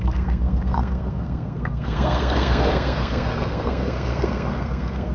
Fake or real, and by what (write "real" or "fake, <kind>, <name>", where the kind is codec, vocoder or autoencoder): fake, codec, SNAC